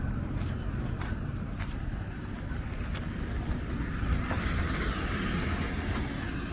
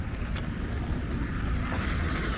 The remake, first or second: second